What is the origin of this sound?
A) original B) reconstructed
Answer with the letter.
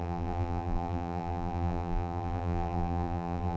B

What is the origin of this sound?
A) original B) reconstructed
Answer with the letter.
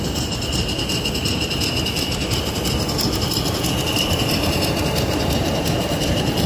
B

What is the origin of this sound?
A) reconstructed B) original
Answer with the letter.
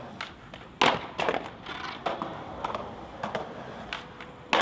B